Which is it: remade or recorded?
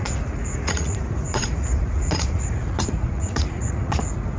remade